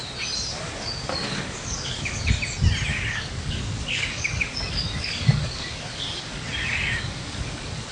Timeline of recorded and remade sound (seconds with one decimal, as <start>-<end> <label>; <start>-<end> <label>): 0.0-0.5 recorded; 0.5-2.3 remade; 2.3-2.9 recorded; 2.9-7.9 remade